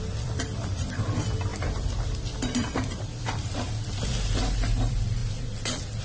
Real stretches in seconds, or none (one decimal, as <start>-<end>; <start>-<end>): 5.2-6.0